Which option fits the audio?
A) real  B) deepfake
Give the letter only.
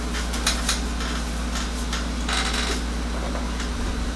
A